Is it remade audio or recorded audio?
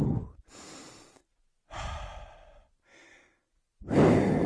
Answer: recorded